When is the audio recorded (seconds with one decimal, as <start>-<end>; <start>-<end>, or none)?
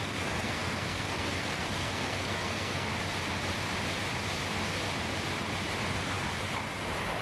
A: 2.9-7.2